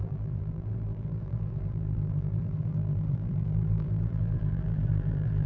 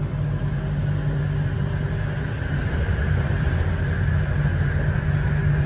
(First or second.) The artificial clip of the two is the first